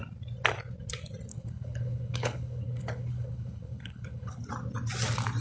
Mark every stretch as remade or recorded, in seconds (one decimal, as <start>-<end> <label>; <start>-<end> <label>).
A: 0.0-1.3 recorded; 1.3-4.5 remade; 4.5-5.4 recorded